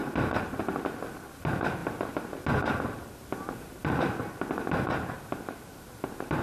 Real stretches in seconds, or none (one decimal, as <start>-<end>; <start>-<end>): 0.0-6.4